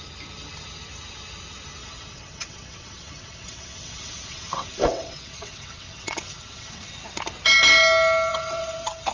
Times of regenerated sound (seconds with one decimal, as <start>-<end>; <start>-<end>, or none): 1.8-6.9; 8.3-9.1